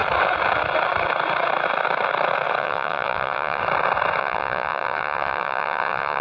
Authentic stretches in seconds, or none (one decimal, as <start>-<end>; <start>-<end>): 0.0-2.6; 3.6-4.2